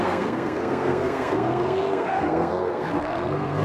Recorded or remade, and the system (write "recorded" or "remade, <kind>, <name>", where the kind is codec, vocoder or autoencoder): remade, codec, SNAC